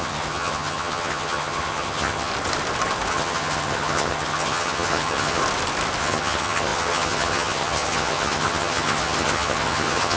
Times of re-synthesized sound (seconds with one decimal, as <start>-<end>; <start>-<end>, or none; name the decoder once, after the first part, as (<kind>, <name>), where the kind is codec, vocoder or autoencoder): 0.0-2.3 (vocoder, HiFi-GAN); 3.1-5.4; 6.0-10.2